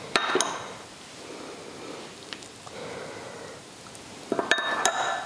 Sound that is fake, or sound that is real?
fake